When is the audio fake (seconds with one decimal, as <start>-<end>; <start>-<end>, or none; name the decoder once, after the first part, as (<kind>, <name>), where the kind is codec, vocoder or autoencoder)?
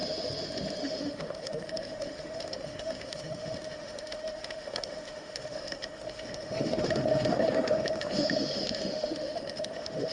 0.8-10.1 (autoencoder, DAC-VAE)